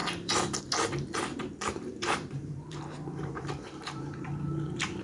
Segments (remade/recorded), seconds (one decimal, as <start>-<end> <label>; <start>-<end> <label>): 0.0-0.6 remade; 0.6-1.3 recorded; 1.3-4.3 remade; 4.3-5.0 recorded